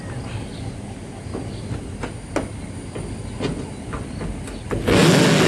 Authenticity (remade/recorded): recorded